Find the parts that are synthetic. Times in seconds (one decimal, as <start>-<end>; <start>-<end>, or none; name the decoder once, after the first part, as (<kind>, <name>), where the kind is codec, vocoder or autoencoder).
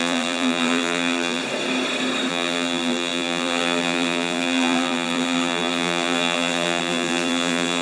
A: 0.0-1.4 (vocoder, BigVGAN v2); 2.3-7.8